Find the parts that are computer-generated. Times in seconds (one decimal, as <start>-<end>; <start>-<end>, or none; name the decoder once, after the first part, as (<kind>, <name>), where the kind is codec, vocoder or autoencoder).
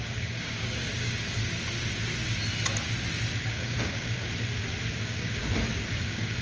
0.0-1.4 (codec, DAC); 3.4-4.3; 5.0-5.4; 5.9-6.4